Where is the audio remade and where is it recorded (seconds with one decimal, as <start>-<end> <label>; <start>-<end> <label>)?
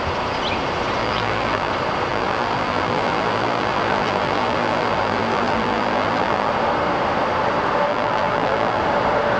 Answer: 0.0-1.0 recorded; 1.0-1.7 remade; 1.7-2.1 recorded; 2.1-6.5 remade; 6.5-7.9 recorded; 7.9-8.8 remade; 8.8-9.4 recorded